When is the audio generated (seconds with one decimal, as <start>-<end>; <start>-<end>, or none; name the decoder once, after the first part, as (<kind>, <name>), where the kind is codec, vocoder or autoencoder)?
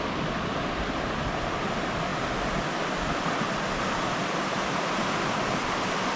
none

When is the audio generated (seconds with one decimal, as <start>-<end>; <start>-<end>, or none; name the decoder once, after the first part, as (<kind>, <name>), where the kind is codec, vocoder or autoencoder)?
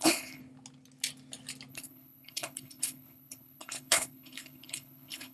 0.0-0.4 (codec, HILCodec); 1.7-5.3